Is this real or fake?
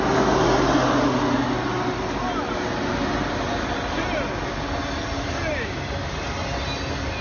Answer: real